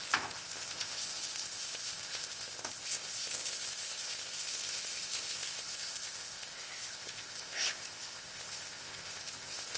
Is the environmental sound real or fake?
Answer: fake